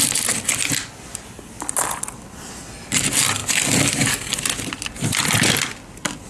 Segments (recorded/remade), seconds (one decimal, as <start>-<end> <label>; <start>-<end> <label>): 0.0-6.3 recorded